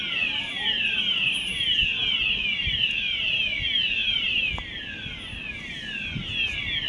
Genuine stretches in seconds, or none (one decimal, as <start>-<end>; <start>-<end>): 0.0-0.4; 2.0-2.6; 3.5-4.0; 4.5-6.9